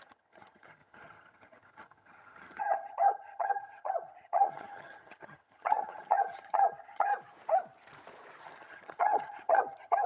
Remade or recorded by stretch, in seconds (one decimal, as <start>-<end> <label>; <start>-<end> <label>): 0.0-7.1 remade; 7.1-8.4 recorded; 8.4-10.1 remade

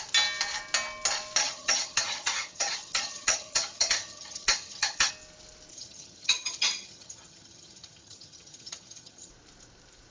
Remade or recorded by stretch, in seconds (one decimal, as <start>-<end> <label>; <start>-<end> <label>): 0.0-1.4 recorded; 1.4-5.1 remade; 5.1-5.7 recorded; 5.7-9.3 remade; 9.3-10.1 recorded

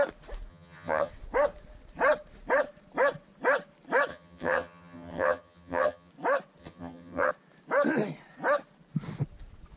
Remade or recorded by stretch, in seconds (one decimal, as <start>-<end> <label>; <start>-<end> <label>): 0.0-0.5 recorded; 0.5-1.1 remade; 1.1-4.1 recorded; 4.1-6.1 remade; 6.1-6.6 recorded; 6.6-7.3 remade; 7.3-9.8 recorded

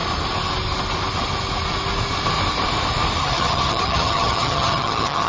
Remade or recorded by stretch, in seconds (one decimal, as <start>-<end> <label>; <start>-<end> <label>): 0.0-3.2 recorded; 3.2-5.3 remade

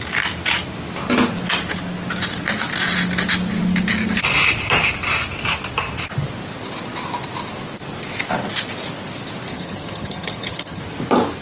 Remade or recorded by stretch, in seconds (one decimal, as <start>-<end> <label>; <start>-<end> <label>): 0.0-9.5 recorded; 9.5-10.8 remade; 10.8-11.4 recorded

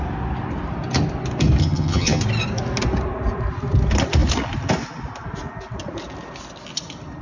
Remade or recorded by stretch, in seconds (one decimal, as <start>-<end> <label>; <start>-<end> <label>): 0.0-1.6 recorded; 1.6-2.2 remade; 2.2-7.2 recorded

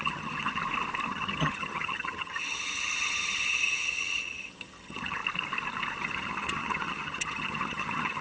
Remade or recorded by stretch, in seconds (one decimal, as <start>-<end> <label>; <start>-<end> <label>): 0.0-0.6 remade; 0.6-1.1 recorded; 1.1-5.2 remade; 5.2-6.0 recorded; 6.0-8.2 remade

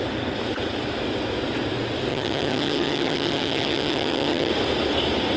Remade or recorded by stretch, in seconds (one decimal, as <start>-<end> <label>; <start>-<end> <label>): 0.0-2.1 recorded; 2.1-4.5 remade; 4.5-5.4 recorded